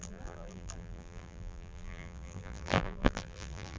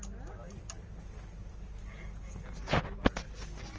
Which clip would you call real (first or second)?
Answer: second